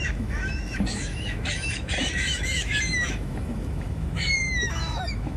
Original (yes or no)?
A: no